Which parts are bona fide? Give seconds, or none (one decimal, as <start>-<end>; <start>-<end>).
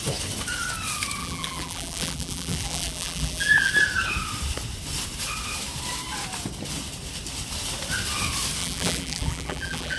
0.0-1.2; 3.7-8.6